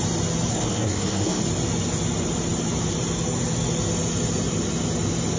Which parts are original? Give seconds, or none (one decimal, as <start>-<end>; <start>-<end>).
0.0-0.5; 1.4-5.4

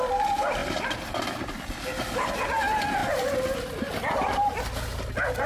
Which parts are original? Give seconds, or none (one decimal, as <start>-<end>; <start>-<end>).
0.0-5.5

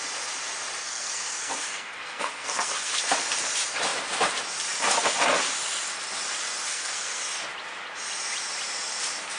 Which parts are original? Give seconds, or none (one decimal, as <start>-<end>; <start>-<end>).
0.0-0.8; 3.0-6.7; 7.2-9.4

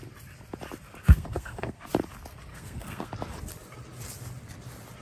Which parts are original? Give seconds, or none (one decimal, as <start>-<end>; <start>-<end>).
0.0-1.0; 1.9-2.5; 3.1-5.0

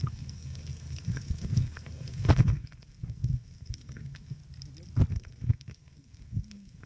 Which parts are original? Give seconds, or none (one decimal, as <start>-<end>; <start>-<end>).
4.4-5.1